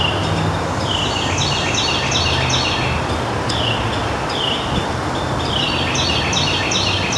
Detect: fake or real real